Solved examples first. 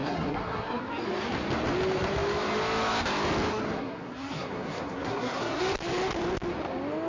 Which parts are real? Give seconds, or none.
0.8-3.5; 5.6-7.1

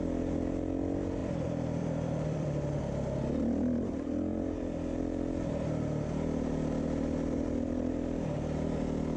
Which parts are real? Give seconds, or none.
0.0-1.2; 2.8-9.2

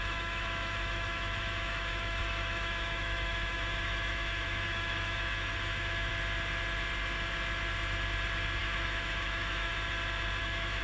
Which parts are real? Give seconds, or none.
6.1-8.6; 9.7-10.4

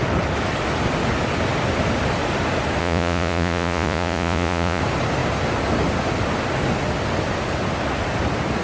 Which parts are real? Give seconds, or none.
0.0-2.8; 4.8-8.6